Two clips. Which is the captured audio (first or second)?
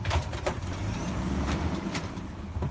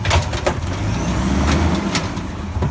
second